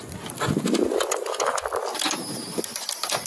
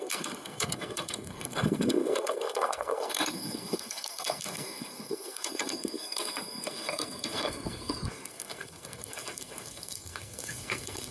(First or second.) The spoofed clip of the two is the second